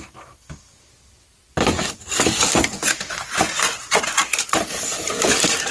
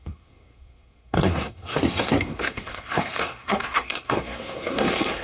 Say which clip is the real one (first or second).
first